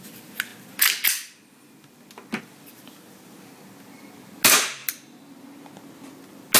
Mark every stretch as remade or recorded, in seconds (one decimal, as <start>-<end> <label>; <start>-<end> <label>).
0.0-6.6 recorded

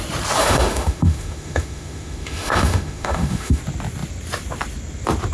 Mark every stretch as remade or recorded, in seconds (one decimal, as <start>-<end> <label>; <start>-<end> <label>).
0.0-0.4 recorded; 0.4-3.6 remade; 3.6-5.3 recorded

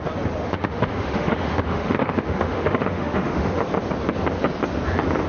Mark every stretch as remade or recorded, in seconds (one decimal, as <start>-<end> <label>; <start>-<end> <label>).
0.0-0.4 recorded; 0.4-3.6 remade; 3.6-5.3 recorded

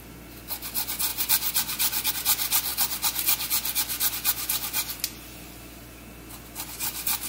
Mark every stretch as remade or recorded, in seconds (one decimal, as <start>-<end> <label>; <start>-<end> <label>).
0.0-7.3 recorded

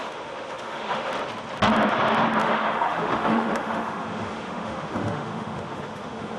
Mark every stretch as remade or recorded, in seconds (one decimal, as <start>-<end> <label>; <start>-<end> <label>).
0.0-1.1 remade; 1.1-2.4 recorded; 2.4-6.4 remade

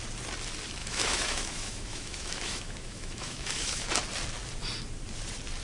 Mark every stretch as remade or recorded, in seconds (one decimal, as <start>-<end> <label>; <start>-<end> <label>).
0.0-0.8 recorded; 0.8-3.9 remade; 3.9-5.6 recorded

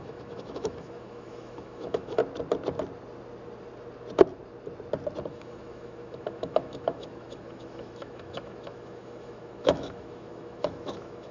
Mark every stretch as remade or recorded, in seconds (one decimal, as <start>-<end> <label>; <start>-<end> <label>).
0.0-2.2 remade; 2.2-5.3 recorded; 5.3-11.3 remade

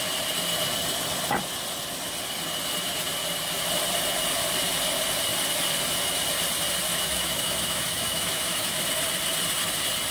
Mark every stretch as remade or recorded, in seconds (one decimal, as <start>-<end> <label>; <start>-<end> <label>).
0.0-6.9 recorded; 6.9-8.8 remade; 8.8-10.1 recorded